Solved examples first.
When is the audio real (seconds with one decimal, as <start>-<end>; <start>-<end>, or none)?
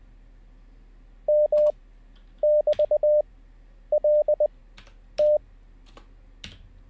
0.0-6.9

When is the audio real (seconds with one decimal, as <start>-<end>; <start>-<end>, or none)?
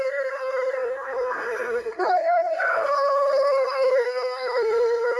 none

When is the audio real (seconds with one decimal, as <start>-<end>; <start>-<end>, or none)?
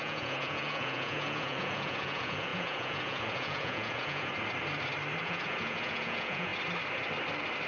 4.3-5.2; 6.5-7.7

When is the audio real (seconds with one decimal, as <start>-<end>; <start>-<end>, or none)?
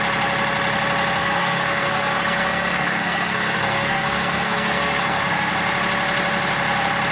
0.0-1.2; 5.5-7.1